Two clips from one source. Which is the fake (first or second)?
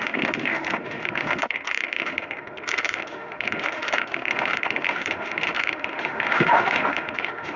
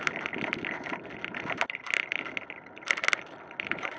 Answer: first